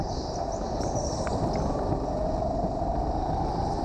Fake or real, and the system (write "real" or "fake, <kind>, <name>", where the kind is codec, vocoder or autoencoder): real